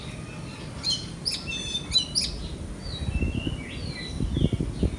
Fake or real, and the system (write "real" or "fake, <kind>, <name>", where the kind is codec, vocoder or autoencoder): real